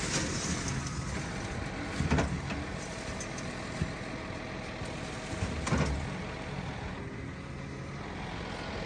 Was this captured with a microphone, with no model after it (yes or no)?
yes